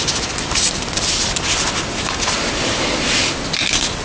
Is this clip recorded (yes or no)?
yes